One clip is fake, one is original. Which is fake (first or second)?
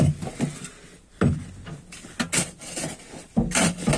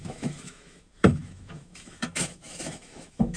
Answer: second